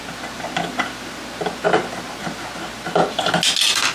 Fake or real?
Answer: real